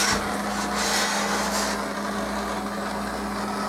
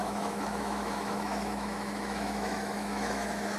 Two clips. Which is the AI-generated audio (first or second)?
second